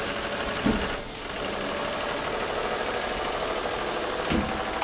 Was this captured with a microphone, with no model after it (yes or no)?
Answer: yes